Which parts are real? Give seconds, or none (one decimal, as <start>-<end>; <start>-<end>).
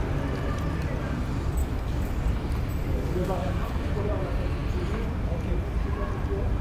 0.0-1.6; 2.1-2.8; 3.7-6.6